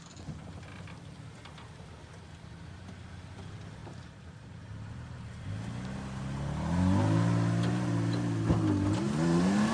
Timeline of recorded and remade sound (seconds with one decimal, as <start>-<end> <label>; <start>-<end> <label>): 0.0-3.8 recorded; 3.8-5.5 remade; 5.5-9.7 recorded